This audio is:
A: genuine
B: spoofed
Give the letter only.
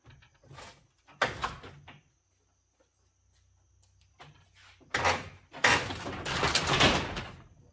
A